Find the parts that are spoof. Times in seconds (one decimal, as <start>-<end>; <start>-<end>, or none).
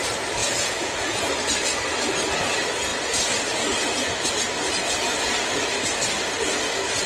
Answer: 0.4-1.2